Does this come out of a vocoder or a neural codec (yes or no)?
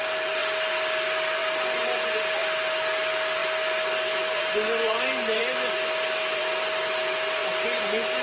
no